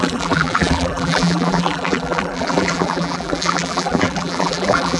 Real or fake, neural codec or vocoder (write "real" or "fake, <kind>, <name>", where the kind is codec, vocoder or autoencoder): fake, vocoder, BigVGAN v2